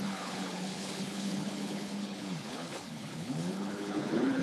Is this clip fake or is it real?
fake